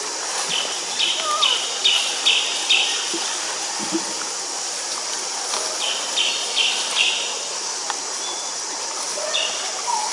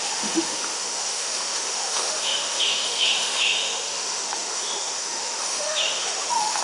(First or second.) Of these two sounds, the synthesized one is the second